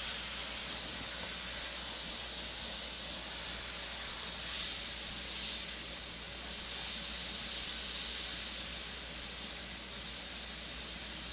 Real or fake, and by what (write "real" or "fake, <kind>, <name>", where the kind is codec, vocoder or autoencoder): real